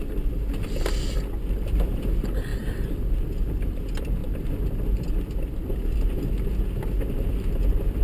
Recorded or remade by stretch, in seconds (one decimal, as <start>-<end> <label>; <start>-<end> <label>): 0.0-8.0 recorded